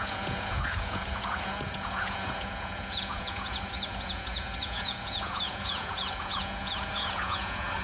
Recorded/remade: remade